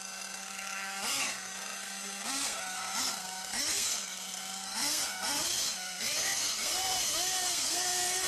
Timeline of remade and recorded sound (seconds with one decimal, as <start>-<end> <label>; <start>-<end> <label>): 0.0-8.3 remade